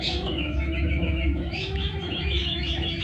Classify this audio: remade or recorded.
remade